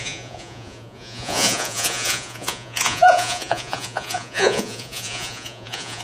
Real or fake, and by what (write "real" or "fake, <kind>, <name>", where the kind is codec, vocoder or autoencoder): fake, vocoder, Vocos